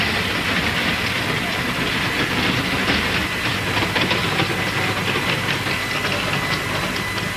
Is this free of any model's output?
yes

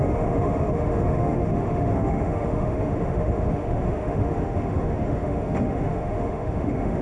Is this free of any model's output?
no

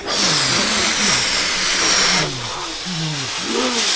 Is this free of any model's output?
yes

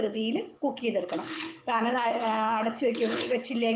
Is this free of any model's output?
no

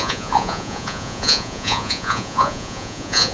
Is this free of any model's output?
no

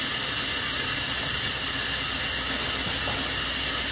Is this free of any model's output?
yes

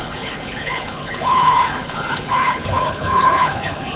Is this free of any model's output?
no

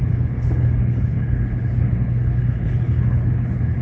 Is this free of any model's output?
no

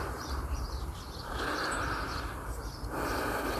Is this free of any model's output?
no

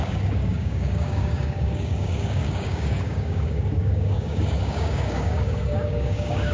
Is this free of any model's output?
no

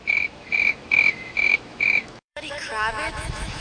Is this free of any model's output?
no